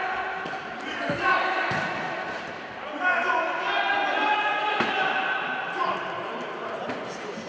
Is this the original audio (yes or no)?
yes